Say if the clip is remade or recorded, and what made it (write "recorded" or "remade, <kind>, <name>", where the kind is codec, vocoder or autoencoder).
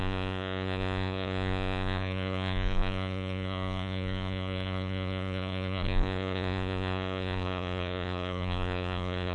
remade, codec, SNAC